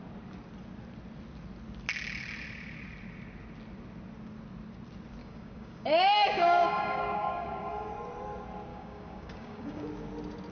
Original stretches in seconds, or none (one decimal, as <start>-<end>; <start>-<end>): 0.0-5.2; 7.9-8.7; 9.9-10.5